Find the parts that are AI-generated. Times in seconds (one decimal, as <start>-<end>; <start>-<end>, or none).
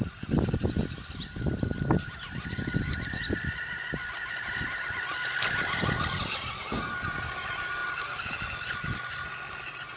none